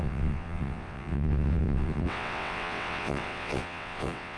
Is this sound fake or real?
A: fake